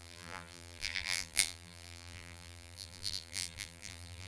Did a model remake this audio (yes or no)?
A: yes